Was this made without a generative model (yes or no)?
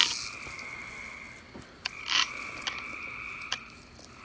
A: yes